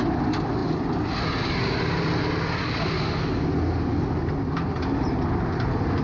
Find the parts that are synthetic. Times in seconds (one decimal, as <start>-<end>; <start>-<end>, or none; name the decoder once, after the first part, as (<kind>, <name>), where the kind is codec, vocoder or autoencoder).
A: none